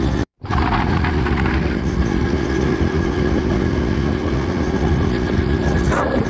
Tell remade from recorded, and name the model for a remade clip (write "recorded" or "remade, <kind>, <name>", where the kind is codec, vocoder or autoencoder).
remade, vocoder, Vocos